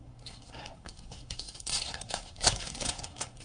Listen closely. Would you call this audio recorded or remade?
remade